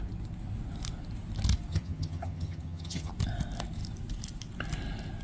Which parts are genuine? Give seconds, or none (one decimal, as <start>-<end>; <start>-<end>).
0.0-1.7; 3.1-5.2

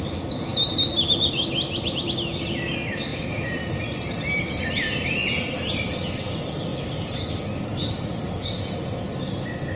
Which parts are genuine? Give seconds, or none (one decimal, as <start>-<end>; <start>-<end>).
0.0-3.1; 3.6-9.8

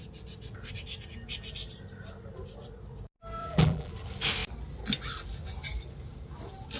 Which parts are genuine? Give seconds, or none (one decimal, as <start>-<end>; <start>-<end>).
0.0-3.4; 3.9-6.8

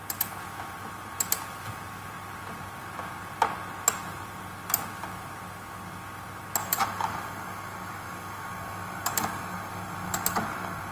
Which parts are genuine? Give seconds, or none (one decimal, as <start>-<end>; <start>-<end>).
0.0-6.6

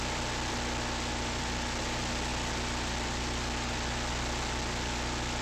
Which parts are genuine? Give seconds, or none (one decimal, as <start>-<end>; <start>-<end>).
0.0-5.4

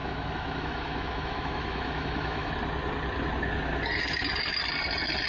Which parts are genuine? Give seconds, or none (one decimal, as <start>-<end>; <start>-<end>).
2.5-5.3

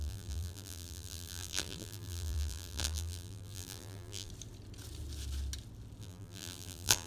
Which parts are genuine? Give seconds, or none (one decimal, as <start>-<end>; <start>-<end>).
4.3-6.0